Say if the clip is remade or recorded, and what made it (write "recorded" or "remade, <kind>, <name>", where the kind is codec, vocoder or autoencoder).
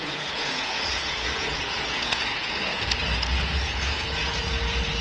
remade, vocoder, Vocos